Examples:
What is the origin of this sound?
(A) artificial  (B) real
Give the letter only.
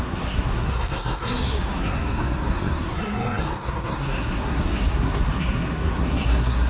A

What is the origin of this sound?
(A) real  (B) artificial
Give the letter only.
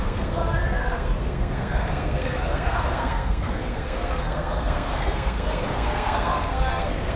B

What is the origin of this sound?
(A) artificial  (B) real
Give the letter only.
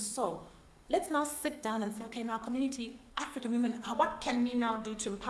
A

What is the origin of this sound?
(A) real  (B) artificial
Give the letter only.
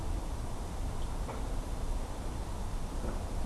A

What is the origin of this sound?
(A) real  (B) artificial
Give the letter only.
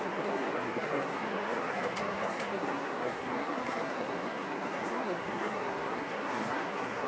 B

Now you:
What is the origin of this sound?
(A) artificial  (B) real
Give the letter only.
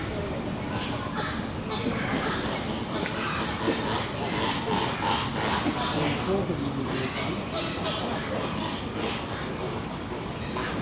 B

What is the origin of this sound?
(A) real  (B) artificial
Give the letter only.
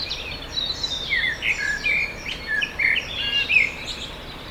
A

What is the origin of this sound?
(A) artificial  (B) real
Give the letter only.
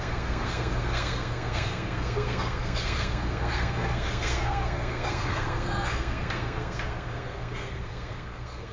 A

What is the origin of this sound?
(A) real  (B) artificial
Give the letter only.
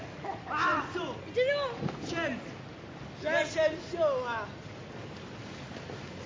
A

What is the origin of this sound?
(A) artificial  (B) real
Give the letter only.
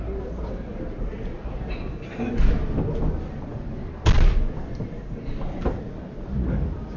B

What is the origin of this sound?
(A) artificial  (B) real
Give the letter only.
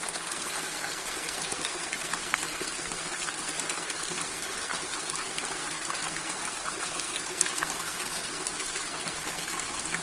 A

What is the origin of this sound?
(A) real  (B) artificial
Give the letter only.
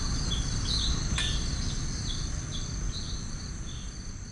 A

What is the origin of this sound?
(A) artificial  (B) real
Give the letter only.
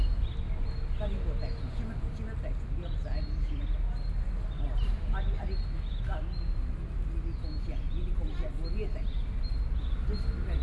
B